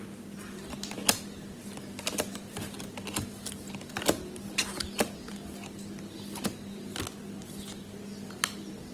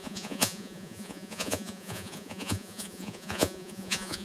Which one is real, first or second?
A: first